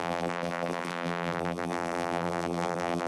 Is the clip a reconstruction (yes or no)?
yes